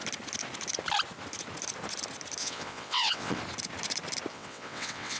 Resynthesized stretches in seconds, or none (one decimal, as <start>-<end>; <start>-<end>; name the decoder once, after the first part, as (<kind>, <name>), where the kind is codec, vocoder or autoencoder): 2.4-3.4 (vocoder, WaveNeXt); 4.3-5.2